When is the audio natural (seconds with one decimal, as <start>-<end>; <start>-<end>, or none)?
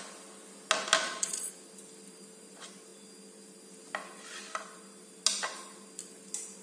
0.0-1.0; 1.5-6.6